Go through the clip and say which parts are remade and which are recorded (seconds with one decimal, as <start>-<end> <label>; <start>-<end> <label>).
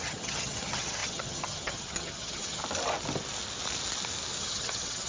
0.0-2.6 remade; 2.6-4.4 recorded; 4.4-5.1 remade